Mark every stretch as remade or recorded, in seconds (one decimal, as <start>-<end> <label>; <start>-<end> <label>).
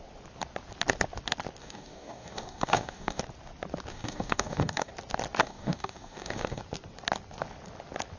0.0-1.6 recorded; 1.6-3.2 remade; 3.2-3.9 recorded; 3.9-4.9 remade; 4.9-5.4 recorded; 5.4-6.6 remade; 6.6-8.2 recorded